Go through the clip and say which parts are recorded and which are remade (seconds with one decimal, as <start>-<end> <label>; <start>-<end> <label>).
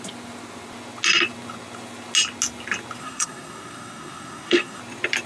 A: 0.0-3.0 recorded; 3.0-4.8 remade; 4.8-5.3 recorded